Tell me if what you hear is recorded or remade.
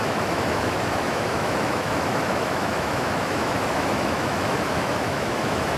remade